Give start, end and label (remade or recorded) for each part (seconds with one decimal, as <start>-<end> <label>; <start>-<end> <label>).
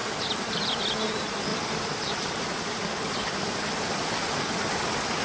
0.0-0.8 remade; 0.8-1.5 recorded; 1.5-2.8 remade; 2.8-5.2 recorded